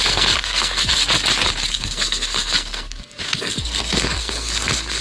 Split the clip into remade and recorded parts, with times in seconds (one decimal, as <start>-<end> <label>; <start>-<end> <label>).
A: 0.0-1.0 remade; 1.0-1.7 recorded; 1.7-5.0 remade